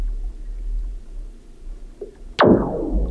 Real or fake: real